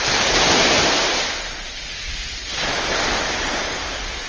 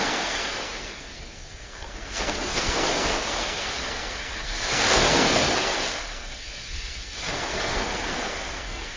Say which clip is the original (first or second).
first